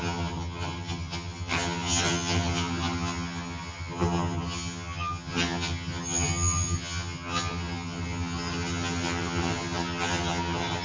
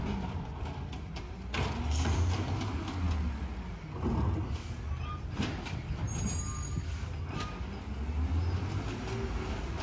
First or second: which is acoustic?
second